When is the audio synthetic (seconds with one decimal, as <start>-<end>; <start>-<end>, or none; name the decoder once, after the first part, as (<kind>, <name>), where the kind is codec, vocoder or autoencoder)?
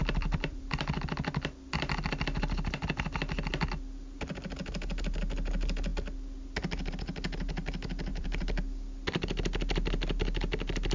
0.0-0.8 (vocoder, BigVGAN v2); 8.1-8.6